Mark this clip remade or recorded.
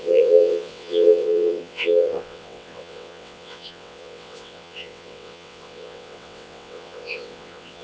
remade